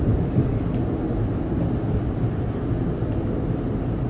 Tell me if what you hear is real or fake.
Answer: real